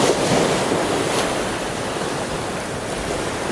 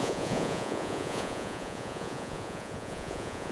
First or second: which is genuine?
first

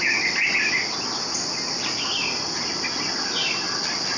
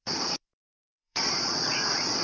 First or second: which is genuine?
first